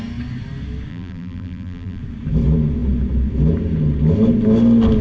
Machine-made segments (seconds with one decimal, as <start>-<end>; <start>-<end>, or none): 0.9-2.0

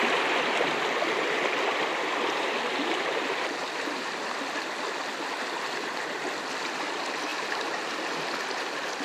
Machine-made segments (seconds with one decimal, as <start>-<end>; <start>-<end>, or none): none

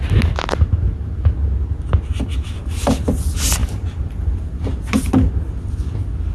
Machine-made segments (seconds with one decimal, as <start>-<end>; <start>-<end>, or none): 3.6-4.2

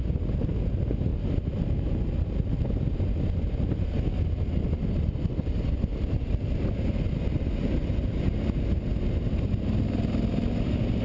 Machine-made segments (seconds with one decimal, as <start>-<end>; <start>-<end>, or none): 5.9-6.9

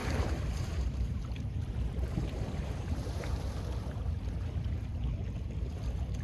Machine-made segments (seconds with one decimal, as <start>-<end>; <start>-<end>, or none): 0.0-3.3

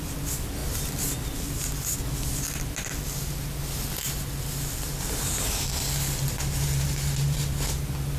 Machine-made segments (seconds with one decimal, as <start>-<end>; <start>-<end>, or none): none